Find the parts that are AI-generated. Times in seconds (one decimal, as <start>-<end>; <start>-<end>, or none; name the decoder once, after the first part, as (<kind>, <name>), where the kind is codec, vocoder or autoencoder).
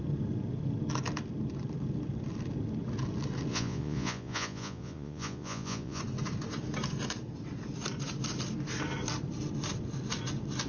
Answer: 3.5-6.0 (vocoder, Vocos)